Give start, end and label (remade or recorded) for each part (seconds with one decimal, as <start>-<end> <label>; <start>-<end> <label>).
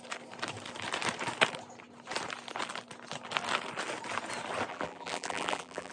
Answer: 0.0-4.7 recorded; 4.7-5.9 remade